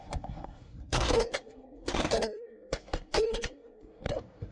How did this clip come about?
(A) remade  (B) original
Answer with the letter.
A